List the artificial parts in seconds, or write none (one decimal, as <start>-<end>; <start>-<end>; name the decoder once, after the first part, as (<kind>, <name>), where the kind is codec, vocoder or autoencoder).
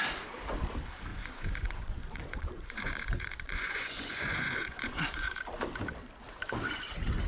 1.1-5.4 (vocoder, Vocos)